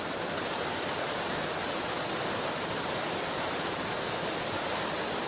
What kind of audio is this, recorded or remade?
recorded